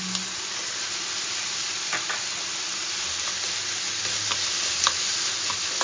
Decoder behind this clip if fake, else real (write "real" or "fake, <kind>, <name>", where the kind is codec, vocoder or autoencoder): real